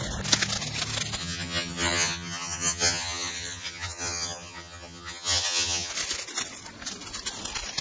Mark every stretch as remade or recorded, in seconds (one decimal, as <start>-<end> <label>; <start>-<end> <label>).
0.0-1.2 recorded; 1.2-5.9 remade; 5.9-7.8 recorded